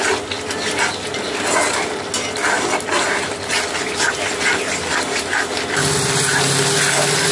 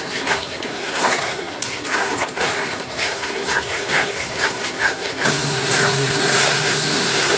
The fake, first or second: second